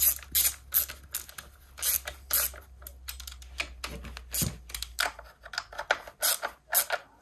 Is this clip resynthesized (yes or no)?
no